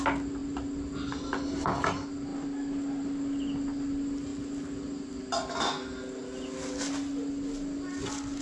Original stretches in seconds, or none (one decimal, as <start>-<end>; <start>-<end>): 0.0-8.4